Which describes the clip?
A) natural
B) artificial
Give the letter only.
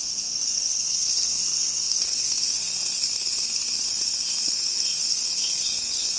B